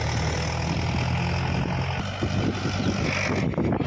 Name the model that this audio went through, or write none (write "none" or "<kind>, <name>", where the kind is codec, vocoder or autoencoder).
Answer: none